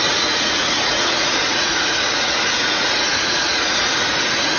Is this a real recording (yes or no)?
no